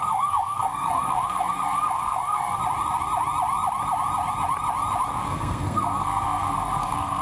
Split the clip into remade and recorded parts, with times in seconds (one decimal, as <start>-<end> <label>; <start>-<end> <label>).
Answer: 0.0-2.6 remade; 2.6-5.3 recorded; 5.3-7.2 remade